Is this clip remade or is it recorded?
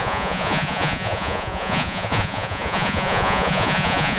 remade